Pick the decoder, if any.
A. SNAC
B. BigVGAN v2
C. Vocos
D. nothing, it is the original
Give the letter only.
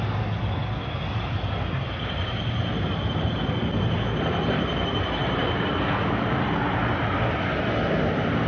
D